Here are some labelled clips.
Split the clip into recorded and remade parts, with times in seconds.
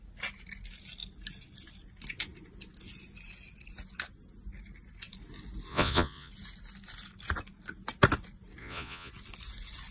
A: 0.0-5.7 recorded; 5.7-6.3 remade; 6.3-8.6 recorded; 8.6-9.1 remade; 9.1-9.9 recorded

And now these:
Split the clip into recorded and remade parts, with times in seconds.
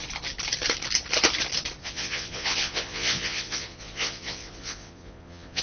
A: 0.0-1.8 recorded; 1.8-5.6 remade